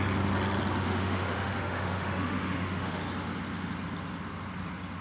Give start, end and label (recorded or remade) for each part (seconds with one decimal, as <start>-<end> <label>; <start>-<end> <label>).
0.0-0.8 recorded; 0.8-3.0 remade; 3.0-5.0 recorded